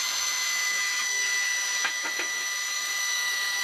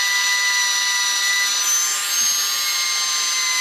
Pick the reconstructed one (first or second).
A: first